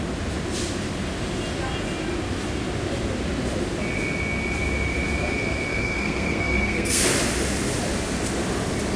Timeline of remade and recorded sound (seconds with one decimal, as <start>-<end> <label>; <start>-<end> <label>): 0.0-5.7 recorded; 5.7-7.0 remade; 7.0-9.0 recorded

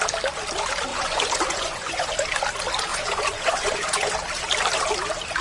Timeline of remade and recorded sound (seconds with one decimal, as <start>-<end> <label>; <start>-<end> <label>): 0.0-0.9 recorded; 0.9-2.1 remade; 2.1-2.9 recorded; 2.9-4.1 remade; 4.1-5.4 recorded

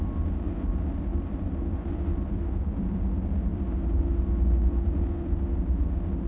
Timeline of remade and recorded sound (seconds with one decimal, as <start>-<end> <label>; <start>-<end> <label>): 0.0-1.1 recorded; 1.1-3.0 remade; 3.0-3.5 recorded; 3.5-4.3 remade; 4.3-6.3 recorded

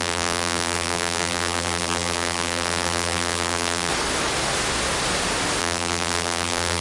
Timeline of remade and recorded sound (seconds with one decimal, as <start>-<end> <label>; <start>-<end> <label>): 0.0-3.9 remade; 3.9-5.6 recorded; 5.6-6.8 remade